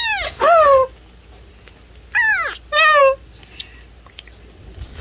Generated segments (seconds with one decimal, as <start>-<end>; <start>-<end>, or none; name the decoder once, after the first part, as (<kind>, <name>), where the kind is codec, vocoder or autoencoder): none